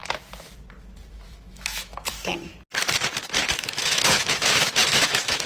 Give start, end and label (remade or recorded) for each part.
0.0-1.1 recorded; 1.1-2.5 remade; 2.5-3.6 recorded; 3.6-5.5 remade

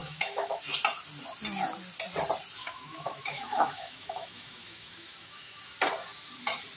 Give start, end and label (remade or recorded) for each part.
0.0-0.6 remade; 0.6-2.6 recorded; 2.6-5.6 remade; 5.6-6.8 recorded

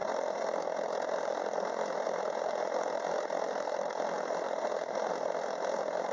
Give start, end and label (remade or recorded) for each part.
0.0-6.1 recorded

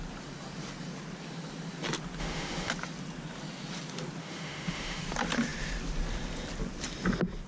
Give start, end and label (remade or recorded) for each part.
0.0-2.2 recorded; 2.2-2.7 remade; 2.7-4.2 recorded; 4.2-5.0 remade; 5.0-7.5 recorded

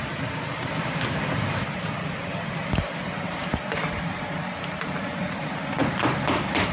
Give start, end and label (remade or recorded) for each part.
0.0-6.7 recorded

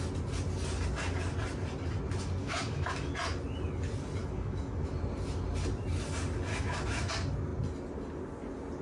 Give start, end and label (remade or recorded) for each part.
0.0-2.4 recorded; 2.4-3.1 remade; 3.1-4.2 recorded; 4.2-5.0 remade; 5.0-6.5 recorded; 6.5-7.1 remade; 7.1-8.8 recorded